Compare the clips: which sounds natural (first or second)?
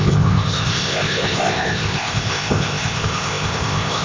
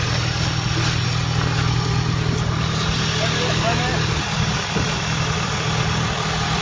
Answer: second